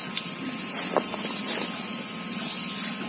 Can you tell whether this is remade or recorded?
recorded